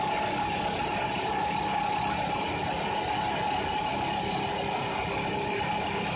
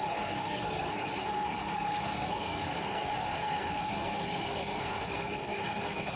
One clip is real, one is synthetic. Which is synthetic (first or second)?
second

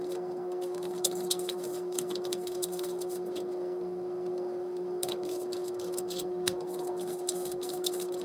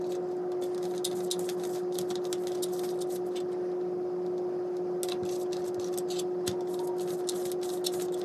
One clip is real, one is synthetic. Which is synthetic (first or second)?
first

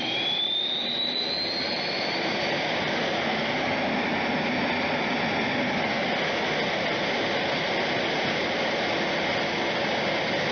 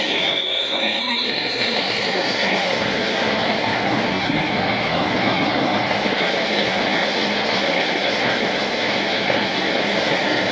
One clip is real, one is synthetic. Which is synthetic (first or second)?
second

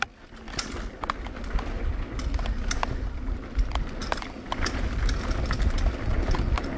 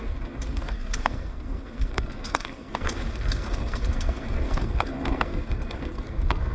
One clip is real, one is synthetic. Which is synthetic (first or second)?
second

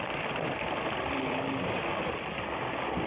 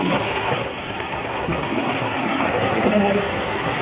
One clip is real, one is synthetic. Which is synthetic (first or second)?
second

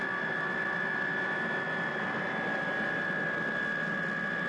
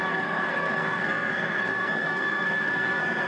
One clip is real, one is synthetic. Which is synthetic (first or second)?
second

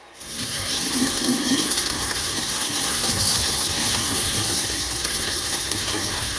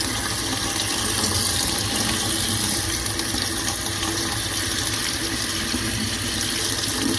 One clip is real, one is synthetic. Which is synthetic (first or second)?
first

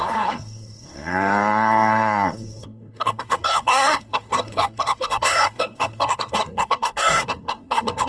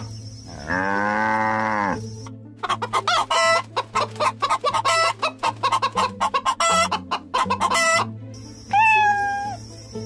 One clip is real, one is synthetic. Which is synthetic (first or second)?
first